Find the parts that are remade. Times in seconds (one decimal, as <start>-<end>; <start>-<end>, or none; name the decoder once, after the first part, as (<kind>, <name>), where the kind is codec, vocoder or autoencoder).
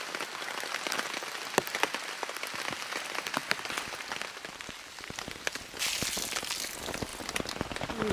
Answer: none